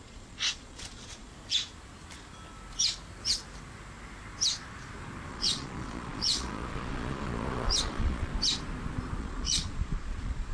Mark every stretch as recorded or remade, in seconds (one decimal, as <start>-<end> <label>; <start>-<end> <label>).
0.0-1.3 remade; 1.3-5.3 recorded; 5.3-8.3 remade; 8.3-9.2 recorded; 9.2-10.5 remade